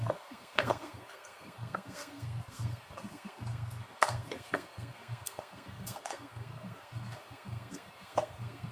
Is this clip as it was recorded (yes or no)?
no